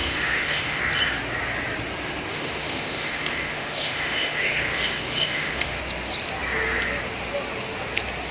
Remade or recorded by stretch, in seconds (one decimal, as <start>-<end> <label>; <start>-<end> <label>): 0.0-0.8 remade; 0.8-2.3 recorded; 2.3-5.8 remade; 5.8-8.3 recorded